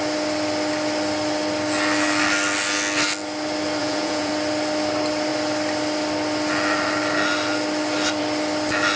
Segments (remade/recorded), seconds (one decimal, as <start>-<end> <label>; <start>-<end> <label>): 0.0-3.8 recorded; 3.8-4.3 remade; 4.3-9.0 recorded